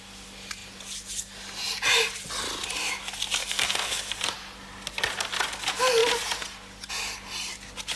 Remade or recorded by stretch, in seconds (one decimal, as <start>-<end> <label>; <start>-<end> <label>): 0.0-3.4 recorded; 3.4-4.1 remade; 4.1-8.0 recorded